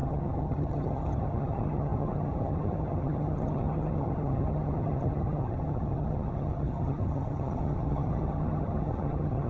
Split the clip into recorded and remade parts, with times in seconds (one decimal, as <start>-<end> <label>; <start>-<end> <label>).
0.0-9.5 remade